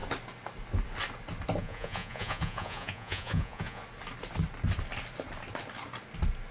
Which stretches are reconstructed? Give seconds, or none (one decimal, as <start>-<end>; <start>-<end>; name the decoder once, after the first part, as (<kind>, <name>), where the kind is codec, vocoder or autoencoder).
1.6-3.8 (vocoder, Vocos)